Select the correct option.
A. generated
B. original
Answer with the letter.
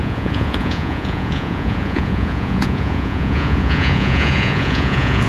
A